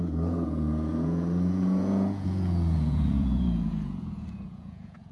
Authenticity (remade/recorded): remade